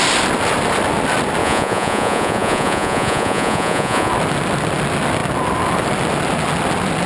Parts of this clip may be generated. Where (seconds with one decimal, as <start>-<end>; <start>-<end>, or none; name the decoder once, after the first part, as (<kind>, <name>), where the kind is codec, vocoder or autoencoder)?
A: 1.4-4.1 (vocoder, Vocos)